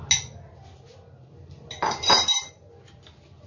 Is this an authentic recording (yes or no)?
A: yes